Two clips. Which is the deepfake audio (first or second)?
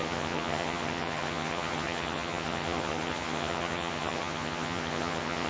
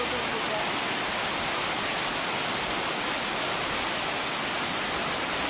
first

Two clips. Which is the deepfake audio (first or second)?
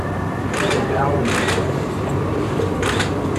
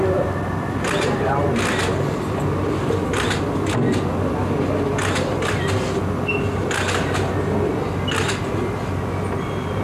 first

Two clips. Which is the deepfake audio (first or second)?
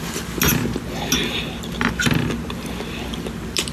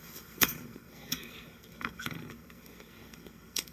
second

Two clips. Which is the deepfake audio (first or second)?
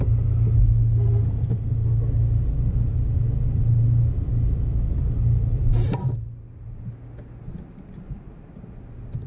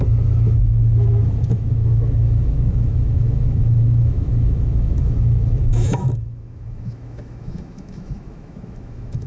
second